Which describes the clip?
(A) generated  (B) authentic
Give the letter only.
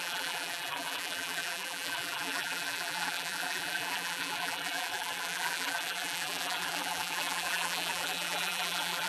A